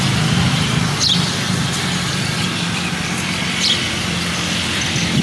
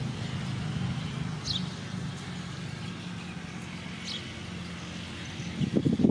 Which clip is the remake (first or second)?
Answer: first